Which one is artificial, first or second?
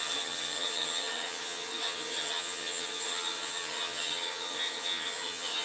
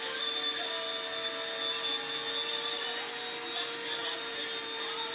first